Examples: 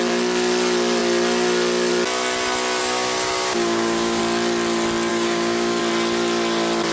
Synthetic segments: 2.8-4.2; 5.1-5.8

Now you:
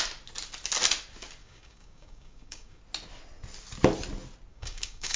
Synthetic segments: 1.4-2.8; 4.5-5.2

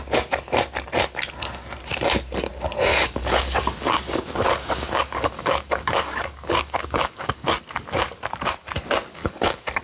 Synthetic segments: 2.9-7.6; 9.1-9.8

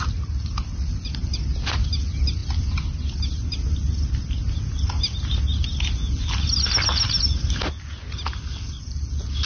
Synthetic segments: none

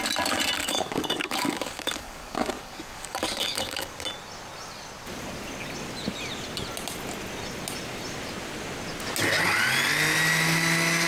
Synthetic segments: 0.6-4.0

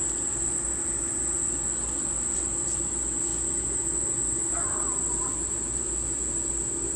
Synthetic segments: none